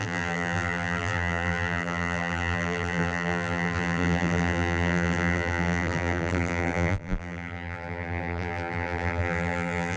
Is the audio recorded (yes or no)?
no